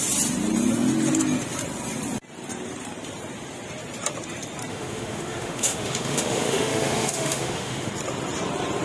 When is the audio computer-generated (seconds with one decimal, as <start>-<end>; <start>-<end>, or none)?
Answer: 4.7-7.9